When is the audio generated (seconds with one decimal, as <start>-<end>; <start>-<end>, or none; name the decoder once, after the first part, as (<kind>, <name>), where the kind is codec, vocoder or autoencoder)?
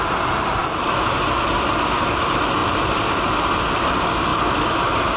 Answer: none